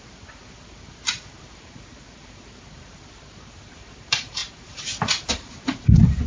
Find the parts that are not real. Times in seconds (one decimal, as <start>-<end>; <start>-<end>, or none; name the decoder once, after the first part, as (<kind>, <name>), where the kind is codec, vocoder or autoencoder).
0.0-6.3 (vocoder, BigVGAN v2)